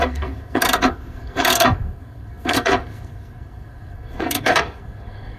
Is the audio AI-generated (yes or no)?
yes